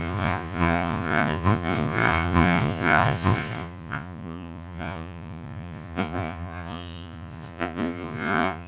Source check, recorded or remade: remade